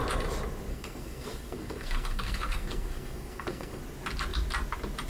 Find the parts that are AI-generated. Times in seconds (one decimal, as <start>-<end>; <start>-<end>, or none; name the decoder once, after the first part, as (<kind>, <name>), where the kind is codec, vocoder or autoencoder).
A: 0.7-3.8 (codec, SNAC)